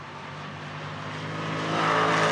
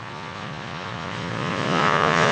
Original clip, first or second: first